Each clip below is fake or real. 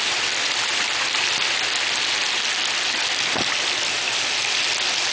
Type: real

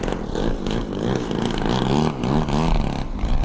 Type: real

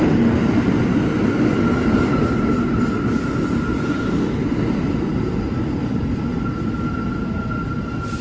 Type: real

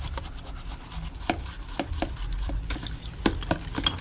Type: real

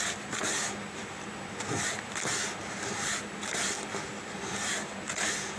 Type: real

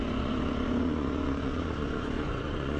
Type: fake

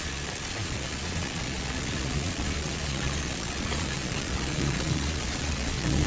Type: fake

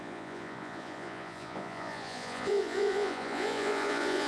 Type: fake